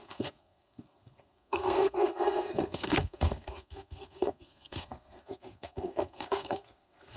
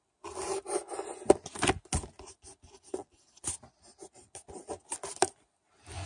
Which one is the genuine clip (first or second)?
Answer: second